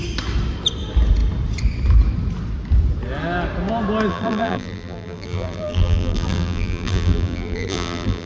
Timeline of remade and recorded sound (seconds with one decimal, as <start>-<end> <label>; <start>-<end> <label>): 0.0-4.1 recorded; 4.1-8.3 remade